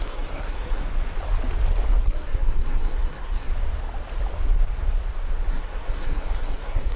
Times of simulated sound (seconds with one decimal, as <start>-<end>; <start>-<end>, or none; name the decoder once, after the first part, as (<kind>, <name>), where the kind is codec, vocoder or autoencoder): 0.0-0.8 (codec, SNAC); 2.0-3.5; 5.5-7.0